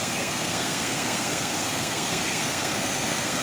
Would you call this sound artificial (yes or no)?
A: yes